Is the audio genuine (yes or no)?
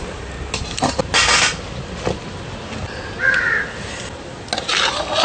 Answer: yes